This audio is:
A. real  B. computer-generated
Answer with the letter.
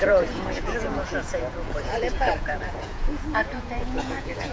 B